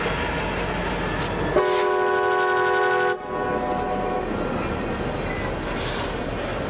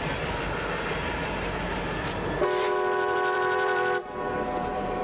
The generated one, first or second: second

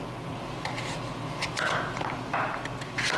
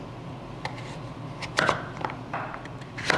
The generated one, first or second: second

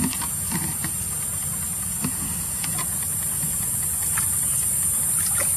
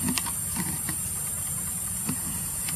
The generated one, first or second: second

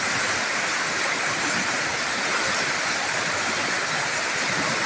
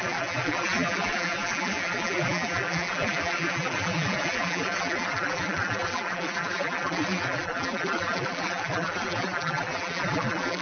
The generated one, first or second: second